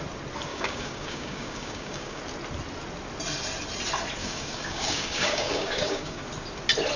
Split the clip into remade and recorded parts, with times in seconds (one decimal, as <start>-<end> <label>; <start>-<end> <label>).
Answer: 0.0-0.5 recorded; 0.5-2.2 remade; 2.2-4.2 recorded; 4.2-6.2 remade; 6.2-7.0 recorded